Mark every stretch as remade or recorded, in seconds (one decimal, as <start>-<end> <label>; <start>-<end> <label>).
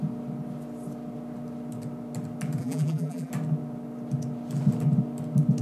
0.0-2.6 recorded; 2.6-3.3 remade; 3.3-5.6 recorded